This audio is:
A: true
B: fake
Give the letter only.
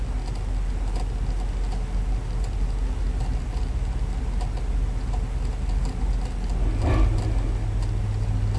A